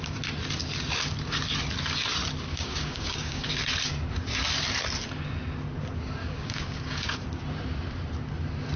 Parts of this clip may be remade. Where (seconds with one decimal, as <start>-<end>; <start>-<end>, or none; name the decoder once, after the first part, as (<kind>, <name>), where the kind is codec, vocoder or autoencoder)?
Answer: 2.5-3.5 (codec, DAC); 6.2-7.2